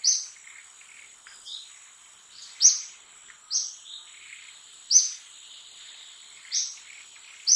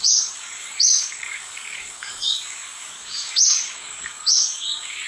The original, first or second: first